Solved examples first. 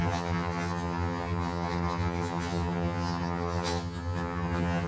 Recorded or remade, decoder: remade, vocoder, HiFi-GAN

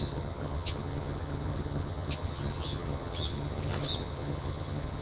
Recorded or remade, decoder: remade, vocoder, HiFi-GAN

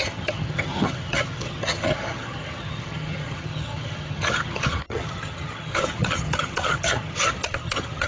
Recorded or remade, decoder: remade, vocoder, HiFi-GAN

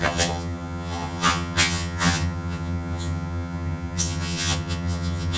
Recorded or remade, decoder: remade, vocoder, HiFi-GAN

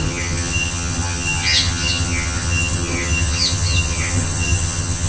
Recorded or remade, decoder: remade, vocoder, HiFi-GAN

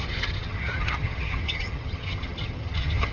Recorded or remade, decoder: remade, vocoder, HiFi-GAN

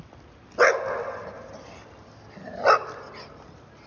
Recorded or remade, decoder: recorded